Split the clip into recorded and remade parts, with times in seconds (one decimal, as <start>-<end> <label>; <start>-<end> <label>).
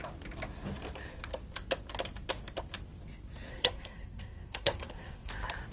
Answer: 0.0-3.5 recorded; 3.5-5.3 remade; 5.3-5.7 recorded